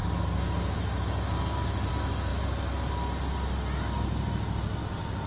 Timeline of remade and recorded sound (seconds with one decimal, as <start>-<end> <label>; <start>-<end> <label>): 0.0-5.3 recorded